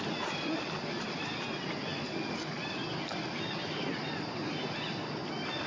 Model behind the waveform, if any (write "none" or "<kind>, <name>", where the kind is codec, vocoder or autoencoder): none